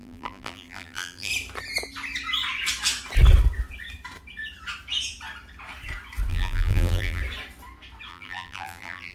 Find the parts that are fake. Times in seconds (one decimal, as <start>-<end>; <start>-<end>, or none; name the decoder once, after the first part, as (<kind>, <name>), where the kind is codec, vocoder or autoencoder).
0.0-1.3 (vocoder, BigVGAN v2); 6.3-7.2; 8.1-9.1